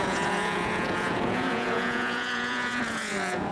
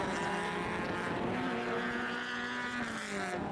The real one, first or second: second